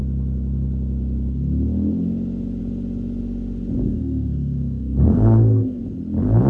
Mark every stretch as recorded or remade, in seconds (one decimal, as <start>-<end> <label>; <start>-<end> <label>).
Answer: 0.0-3.8 recorded; 3.8-5.8 remade; 5.8-6.5 recorded